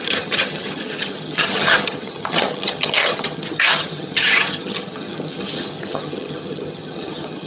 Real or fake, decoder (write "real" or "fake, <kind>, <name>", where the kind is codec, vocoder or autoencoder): fake, vocoder, HiFi-GAN